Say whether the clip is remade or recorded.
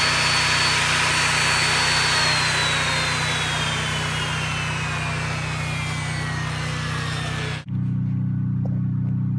recorded